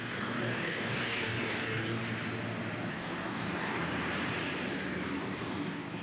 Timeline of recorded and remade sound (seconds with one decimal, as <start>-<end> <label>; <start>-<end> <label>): 0.0-2.0 remade; 2.0-2.9 recorded; 2.9-3.8 remade; 3.8-5.2 recorded; 5.2-6.0 remade